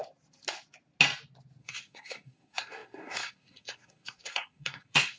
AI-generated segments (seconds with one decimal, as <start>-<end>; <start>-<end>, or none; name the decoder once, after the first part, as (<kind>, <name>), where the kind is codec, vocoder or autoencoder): 1.6-5.2 (codec, SNAC)

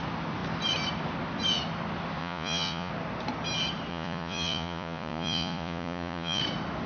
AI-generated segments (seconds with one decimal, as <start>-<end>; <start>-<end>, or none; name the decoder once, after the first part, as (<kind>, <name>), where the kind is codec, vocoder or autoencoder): 2.2-2.9 (vocoder, Vocos); 3.9-6.4

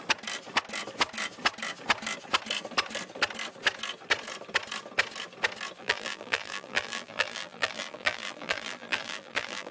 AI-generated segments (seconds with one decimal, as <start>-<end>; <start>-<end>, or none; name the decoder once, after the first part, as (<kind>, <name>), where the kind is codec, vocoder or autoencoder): 5.8-9.7 (vocoder, BigVGAN v2)